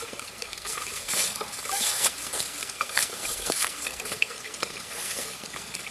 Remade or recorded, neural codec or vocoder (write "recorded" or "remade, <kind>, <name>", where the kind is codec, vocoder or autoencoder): remade, codec, SNAC